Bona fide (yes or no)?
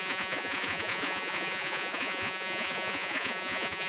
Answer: no